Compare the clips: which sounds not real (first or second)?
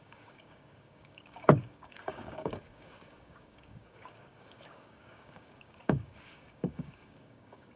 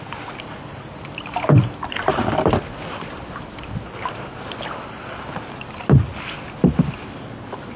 first